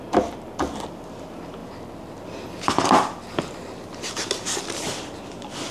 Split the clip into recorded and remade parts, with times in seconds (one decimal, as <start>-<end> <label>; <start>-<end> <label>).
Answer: 0.0-5.7 recorded